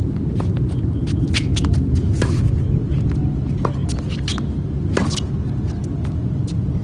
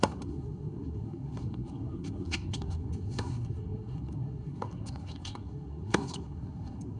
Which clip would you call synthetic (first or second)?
second